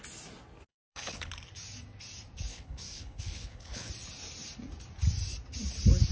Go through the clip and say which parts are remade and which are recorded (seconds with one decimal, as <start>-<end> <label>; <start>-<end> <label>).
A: 0.0-0.7 recorded; 0.7-1.3 remade; 1.3-2.5 recorded; 2.5-3.9 remade; 3.9-6.1 recorded